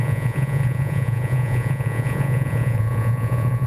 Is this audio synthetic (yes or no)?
yes